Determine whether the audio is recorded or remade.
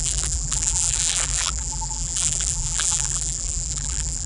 remade